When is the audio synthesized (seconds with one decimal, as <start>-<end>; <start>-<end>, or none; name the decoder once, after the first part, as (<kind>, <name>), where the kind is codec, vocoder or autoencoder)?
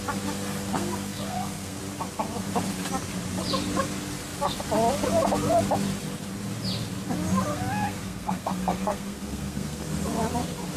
0.7-1.8 (codec, SNAC); 7.5-9.8